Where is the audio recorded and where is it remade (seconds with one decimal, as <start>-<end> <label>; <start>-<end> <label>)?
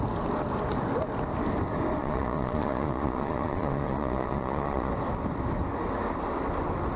0.0-2.0 recorded; 2.0-4.9 remade; 4.9-7.0 recorded